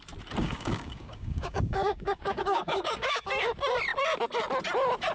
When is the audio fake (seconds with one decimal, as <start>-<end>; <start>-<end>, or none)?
0.4-3.3